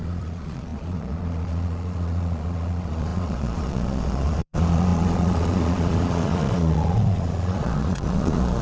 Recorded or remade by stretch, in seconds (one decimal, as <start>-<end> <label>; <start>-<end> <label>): 0.0-8.6 remade